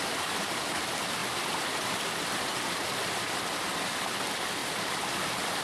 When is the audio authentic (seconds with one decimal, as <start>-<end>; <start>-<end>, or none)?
0.0-1.2; 1.9-4.6